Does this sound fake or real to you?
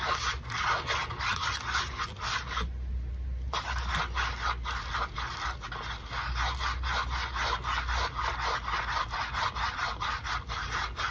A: real